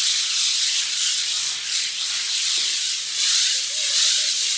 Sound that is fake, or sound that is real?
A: real